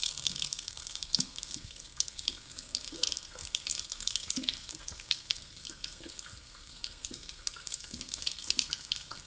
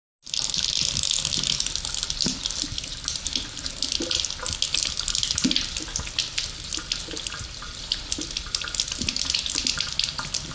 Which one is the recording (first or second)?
second